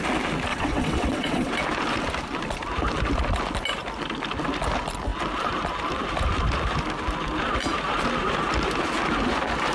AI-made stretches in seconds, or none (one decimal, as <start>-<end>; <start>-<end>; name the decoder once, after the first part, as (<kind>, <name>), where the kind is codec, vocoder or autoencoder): 0.5-1.5 (vocoder, WaveNeXt)